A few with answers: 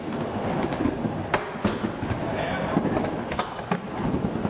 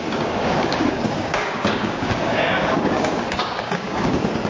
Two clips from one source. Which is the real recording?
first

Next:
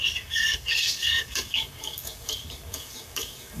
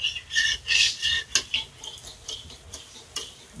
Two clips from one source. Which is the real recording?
second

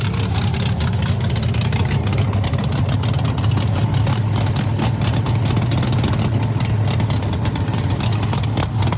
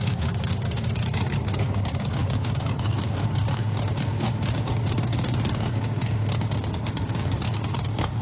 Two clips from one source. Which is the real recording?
first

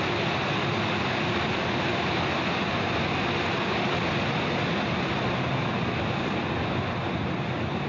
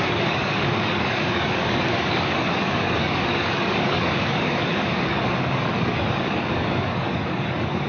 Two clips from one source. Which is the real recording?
first